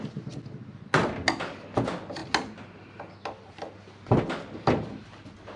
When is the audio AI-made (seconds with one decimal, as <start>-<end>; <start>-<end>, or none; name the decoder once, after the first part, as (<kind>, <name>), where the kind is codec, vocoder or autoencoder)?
none